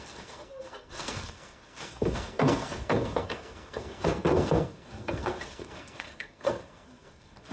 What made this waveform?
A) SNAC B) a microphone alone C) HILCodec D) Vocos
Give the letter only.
A